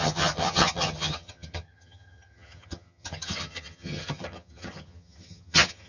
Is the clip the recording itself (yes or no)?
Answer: no